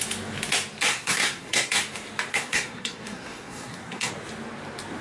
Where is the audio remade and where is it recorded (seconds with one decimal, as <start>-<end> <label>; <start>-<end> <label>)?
0.0-0.9 recorded; 0.9-1.8 remade; 1.8-2.3 recorded; 2.3-4.1 remade; 4.1-5.0 recorded